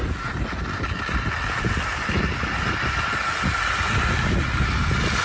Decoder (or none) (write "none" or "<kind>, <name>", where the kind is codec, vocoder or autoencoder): none